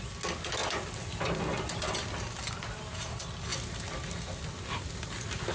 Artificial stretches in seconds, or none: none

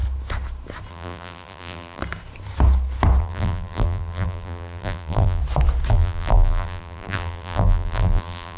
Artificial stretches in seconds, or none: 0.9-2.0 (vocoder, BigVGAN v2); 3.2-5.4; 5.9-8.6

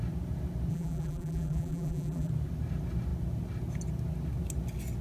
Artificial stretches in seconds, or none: 0.7-2.3 (vocoder, BigVGAN v2)